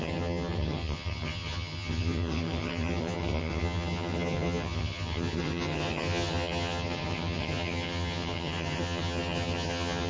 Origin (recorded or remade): remade